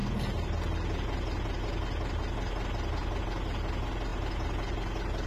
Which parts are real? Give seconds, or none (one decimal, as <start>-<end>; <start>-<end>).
0.0-5.3